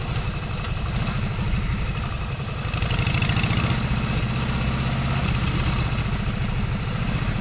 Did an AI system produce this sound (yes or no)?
no